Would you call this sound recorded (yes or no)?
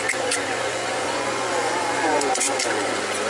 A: no